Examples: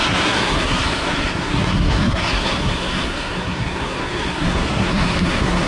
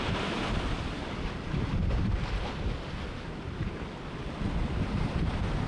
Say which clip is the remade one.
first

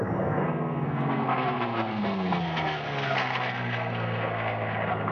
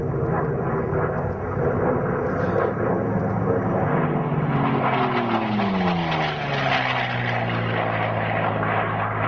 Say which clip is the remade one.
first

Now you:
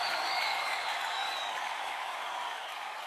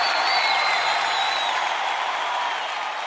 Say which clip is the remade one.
first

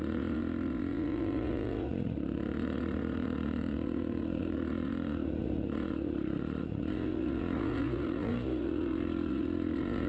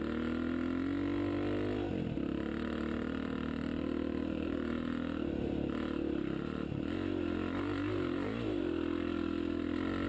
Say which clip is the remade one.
first